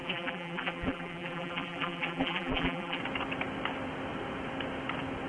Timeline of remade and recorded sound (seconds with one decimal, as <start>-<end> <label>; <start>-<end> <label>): 0.0-3.0 remade; 3.0-5.3 recorded